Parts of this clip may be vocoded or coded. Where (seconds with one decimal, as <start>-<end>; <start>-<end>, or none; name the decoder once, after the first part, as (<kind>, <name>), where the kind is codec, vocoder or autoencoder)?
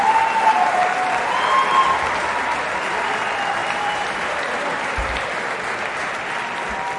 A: 3.6-5.2 (vocoder, BigVGAN v2)